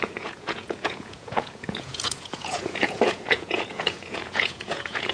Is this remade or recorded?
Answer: remade